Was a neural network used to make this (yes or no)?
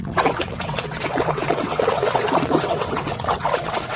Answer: yes